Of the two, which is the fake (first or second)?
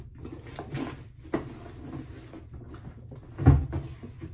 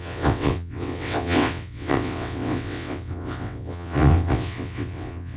second